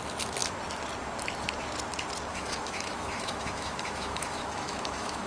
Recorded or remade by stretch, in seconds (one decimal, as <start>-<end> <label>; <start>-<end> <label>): 0.0-2.3 recorded; 2.3-5.3 remade